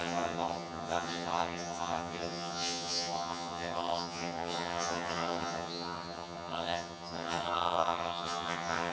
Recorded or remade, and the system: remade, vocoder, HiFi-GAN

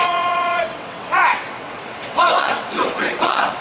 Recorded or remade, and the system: remade, vocoder, WaveNeXt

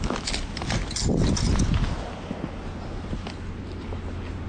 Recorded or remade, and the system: recorded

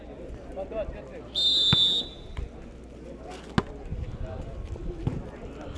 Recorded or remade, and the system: recorded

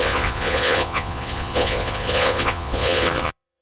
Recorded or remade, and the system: remade, vocoder, Vocos